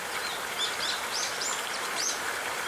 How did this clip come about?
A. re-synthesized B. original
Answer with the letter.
B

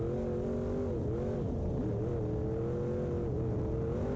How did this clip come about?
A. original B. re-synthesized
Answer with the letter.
A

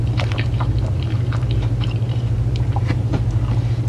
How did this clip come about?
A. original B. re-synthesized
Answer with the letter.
B